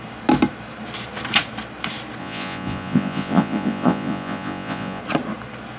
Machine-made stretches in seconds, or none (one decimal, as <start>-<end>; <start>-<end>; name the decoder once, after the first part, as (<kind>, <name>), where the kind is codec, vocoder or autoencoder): 2.2-5.0 (vocoder, Vocos)